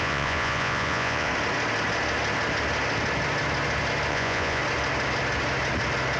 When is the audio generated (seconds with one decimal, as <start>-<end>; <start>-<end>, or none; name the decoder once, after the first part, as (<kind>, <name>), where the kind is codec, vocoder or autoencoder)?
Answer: 0.0-1.3 (vocoder, Vocos); 4.1-4.6